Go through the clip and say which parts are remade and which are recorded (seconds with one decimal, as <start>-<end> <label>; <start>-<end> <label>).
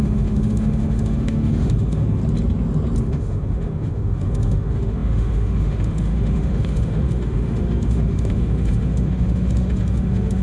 0.0-2.2 remade; 2.2-3.0 recorded; 3.0-10.4 remade